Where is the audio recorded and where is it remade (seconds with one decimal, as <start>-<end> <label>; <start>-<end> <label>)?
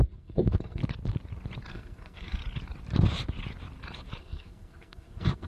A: 0.0-0.8 remade; 0.8-1.7 recorded; 1.7-2.4 remade; 2.4-4.2 recorded; 4.2-5.5 remade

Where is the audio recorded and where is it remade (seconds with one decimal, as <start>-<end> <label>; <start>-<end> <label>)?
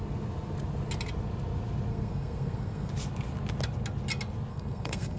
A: 0.0-1.9 recorded; 1.9-2.9 remade; 2.9-4.5 recorded; 4.5-5.2 remade